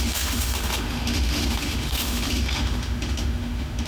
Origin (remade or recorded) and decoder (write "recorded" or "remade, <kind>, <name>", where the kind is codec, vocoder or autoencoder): remade, autoencoder, DAC-VAE